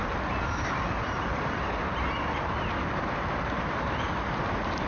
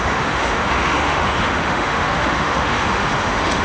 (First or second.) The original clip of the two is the first